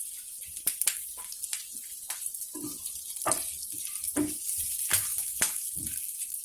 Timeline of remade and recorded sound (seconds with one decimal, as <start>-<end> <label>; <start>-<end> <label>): 0.0-5.1 recorded; 5.1-5.7 remade; 5.7-6.4 recorded